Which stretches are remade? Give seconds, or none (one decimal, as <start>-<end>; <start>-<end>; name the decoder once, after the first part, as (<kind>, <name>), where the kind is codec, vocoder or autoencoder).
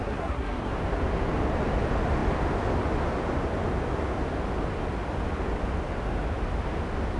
0.0-0.7 (codec, SNAC)